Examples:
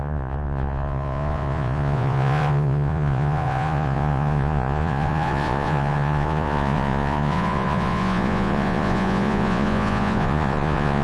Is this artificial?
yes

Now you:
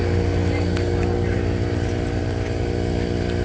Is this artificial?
no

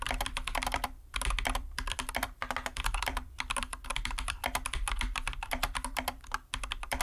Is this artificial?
yes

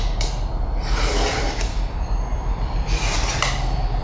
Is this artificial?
yes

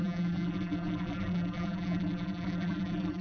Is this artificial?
yes